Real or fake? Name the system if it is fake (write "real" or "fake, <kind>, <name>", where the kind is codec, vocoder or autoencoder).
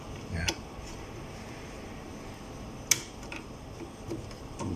real